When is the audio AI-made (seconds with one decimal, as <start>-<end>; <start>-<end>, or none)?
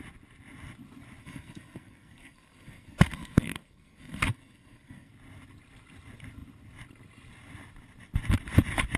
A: 1.2-5.1